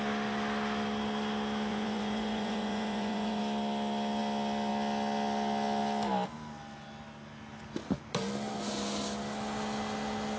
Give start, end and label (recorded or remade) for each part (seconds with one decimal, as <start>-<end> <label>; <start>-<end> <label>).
0.0-1.7 recorded; 1.7-3.4 remade; 3.4-10.4 recorded